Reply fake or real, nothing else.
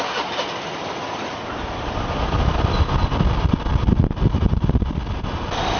real